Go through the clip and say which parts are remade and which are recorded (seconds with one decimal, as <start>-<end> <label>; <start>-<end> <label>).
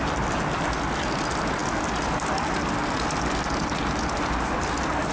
0.0-5.1 recorded